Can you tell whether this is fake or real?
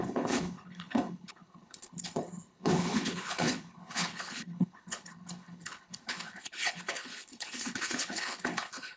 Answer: fake